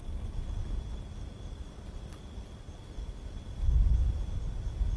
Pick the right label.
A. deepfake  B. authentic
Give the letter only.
B